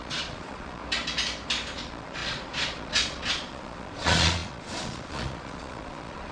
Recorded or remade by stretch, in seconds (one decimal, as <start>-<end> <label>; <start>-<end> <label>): 0.0-0.8 remade; 0.8-1.7 recorded; 1.7-6.3 remade

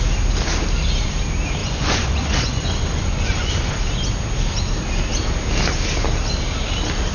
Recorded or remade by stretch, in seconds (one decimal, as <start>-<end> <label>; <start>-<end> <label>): 0.0-1.6 recorded; 1.6-3.8 remade; 3.8-7.1 recorded

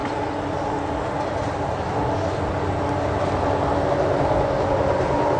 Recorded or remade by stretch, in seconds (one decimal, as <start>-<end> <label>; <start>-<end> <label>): 0.0-5.4 recorded

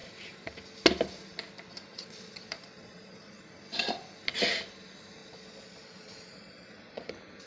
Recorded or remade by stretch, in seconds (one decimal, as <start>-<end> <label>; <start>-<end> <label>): 0.0-1.9 recorded; 1.9-3.4 remade; 3.4-5.2 recorded; 5.2-7.1 remade; 7.1-7.5 recorded

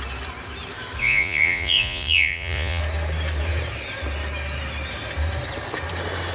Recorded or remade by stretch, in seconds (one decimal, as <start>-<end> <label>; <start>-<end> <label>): 0.0-1.0 recorded; 1.0-2.8 remade; 2.8-6.3 recorded

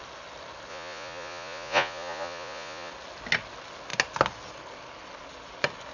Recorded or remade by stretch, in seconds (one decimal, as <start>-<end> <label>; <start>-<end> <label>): 0.0-0.7 recorded; 0.7-2.9 remade; 2.9-5.9 recorded